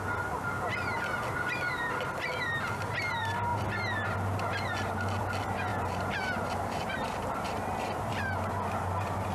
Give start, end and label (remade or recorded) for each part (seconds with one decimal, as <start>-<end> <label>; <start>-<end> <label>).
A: 0.0-5.7 recorded; 5.7-8.5 remade; 8.5-9.3 recorded